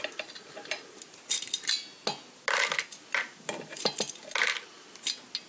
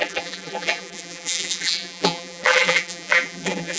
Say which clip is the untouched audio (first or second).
first